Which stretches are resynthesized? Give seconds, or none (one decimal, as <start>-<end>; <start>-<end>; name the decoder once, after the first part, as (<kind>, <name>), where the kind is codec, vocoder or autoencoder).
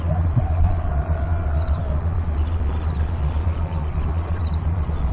0.0-5.1 (vocoder, Vocos)